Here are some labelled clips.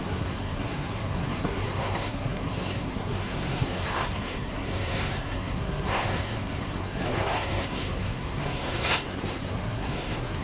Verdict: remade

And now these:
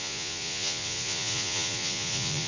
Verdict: remade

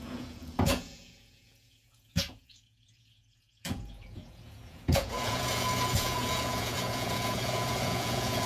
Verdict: remade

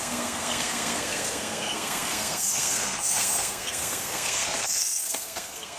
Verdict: remade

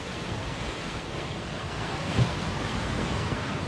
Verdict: remade